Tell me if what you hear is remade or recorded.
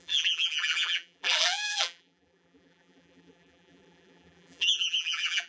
remade